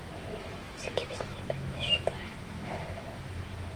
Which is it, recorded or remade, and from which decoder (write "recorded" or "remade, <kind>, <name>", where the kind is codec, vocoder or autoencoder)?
remade, autoencoder, DAC-VAE